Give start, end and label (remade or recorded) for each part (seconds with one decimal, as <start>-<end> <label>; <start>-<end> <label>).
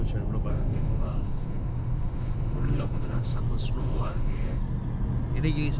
0.0-0.5 recorded; 0.5-3.4 remade; 3.4-3.8 recorded; 3.8-4.6 remade; 4.6-5.8 recorded